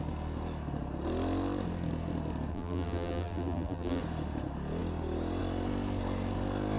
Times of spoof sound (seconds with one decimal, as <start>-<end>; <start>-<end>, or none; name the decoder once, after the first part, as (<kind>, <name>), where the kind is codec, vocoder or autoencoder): 2.5-4.0 (vocoder, BigVGAN v2)